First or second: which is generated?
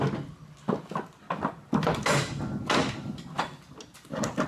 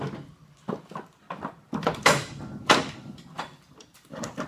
second